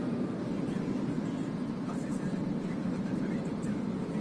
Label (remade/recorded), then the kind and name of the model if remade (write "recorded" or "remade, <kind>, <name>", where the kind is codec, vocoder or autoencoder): recorded